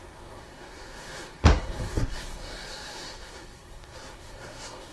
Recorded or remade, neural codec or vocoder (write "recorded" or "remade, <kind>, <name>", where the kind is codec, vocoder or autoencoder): remade, codec, SNAC